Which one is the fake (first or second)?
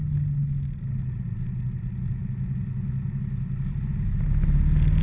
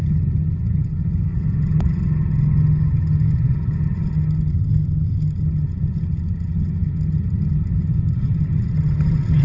second